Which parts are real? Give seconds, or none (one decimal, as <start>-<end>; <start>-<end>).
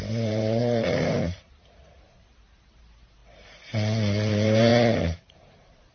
3.2-4.3; 4.7-5.3